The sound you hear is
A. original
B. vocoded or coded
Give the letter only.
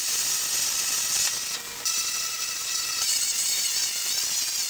A